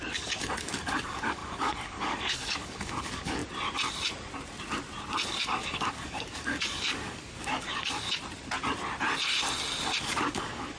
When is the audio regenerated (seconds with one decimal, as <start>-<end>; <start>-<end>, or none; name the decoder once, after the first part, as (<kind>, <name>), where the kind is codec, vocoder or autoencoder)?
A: 0.0-3.4 (codec, DAC); 5.3-8.2; 10.0-10.8